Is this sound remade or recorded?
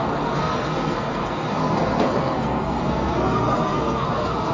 remade